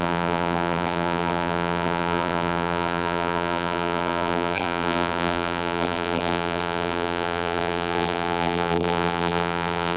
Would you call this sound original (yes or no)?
no